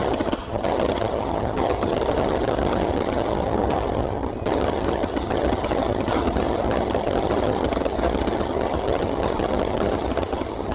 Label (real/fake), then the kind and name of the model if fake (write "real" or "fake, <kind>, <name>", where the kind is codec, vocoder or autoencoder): fake, vocoder, HiFi-GAN